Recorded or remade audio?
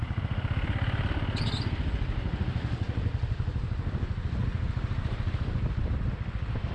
remade